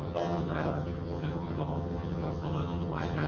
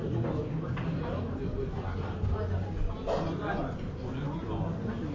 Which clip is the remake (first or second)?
first